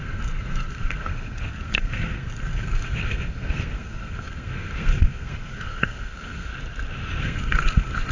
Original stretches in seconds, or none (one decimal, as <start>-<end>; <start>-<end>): 6.5-7.2